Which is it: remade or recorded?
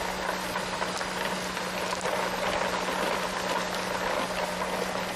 recorded